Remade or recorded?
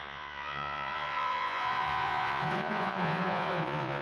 remade